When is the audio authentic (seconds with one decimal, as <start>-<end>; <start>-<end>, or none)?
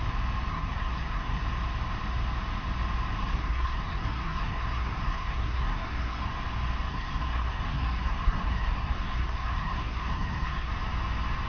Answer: 0.0-0.5; 1.4-3.2; 6.3-6.9; 10.7-11.5